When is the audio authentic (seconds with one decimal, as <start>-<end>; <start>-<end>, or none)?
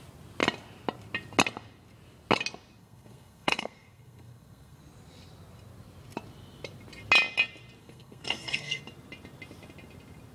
0.0-2.8; 4.8-7.8; 8.8-10.3